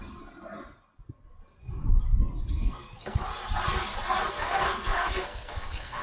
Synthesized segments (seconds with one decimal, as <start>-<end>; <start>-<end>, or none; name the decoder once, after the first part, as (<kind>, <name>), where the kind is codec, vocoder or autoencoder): 2.5-3.3 (codec, SNAC); 4.3-6.0

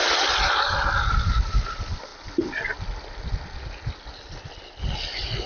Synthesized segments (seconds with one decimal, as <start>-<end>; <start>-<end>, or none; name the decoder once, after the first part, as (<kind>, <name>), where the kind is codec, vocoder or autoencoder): none

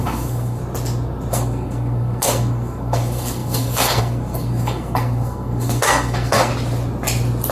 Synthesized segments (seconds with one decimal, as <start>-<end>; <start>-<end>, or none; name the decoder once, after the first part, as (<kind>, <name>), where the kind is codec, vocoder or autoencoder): 0.0-0.6 (codec, SNAC); 1.3-6.5

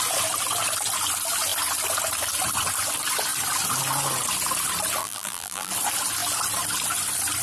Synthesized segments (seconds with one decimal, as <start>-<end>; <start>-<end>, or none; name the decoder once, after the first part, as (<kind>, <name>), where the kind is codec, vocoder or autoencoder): 5.0-5.7 (vocoder, BigVGAN v2)

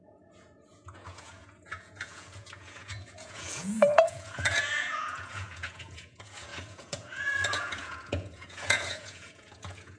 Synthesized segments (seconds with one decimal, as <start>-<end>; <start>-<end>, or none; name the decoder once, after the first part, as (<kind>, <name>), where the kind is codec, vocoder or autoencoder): 0.0-10.0 (vocoder, Vocos)

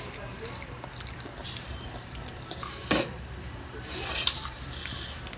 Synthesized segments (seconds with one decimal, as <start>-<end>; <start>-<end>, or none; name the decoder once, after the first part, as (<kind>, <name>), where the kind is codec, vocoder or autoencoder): 1.4-4.6 (vocoder, BigVGAN v2)